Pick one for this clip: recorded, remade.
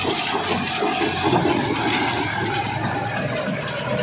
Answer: recorded